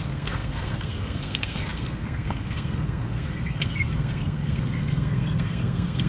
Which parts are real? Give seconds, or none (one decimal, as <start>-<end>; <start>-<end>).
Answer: none

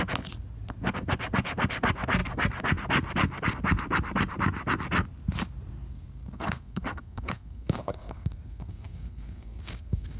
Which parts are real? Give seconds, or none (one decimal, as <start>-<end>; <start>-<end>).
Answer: 0.0-5.9

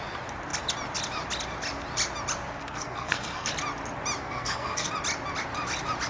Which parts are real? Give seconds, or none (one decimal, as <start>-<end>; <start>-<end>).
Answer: 0.0-2.6; 3.5-4.2; 4.9-6.1

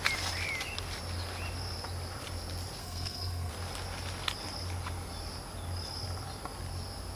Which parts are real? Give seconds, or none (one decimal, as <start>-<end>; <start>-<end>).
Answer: 0.0-2.8; 3.5-7.2

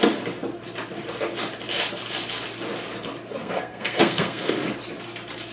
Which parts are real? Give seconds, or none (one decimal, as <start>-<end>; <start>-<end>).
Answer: 0.0-3.4; 4.5-5.5

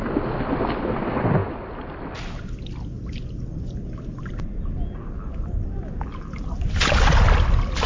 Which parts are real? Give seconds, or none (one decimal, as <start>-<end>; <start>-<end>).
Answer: 0.0-7.9

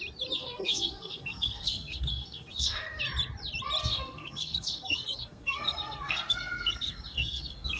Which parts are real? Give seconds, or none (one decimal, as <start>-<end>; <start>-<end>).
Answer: 0.0-0.4; 3.0-3.8

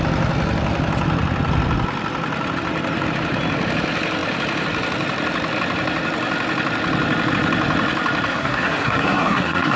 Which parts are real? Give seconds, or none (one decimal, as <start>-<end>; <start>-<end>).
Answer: 0.0-8.3